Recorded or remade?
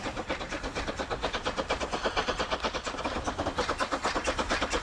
remade